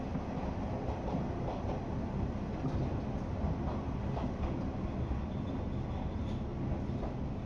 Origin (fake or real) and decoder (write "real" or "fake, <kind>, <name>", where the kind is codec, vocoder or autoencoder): real